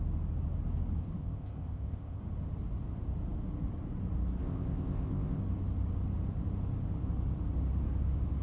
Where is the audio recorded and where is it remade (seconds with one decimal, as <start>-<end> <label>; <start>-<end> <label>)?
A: 0.0-1.2 recorded; 1.2-2.2 remade; 2.2-4.4 recorded; 4.4-5.4 remade; 5.4-8.4 recorded